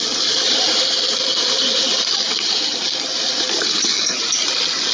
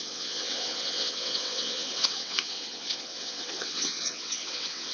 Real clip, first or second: first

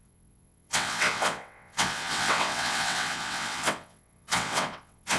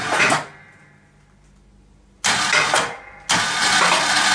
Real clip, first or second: second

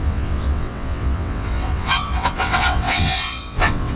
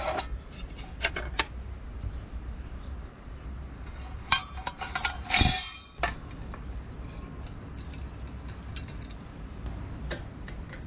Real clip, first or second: second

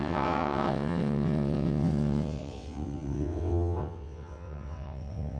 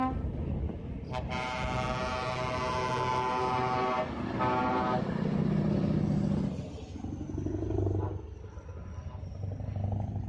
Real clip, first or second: second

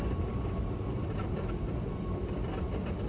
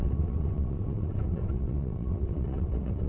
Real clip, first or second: first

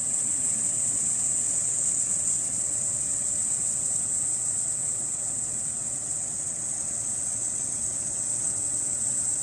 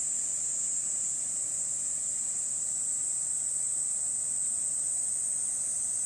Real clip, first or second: second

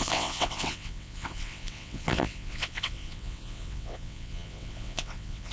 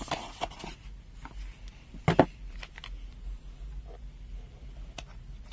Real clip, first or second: second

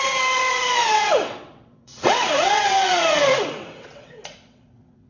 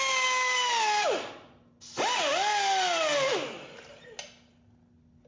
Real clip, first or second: second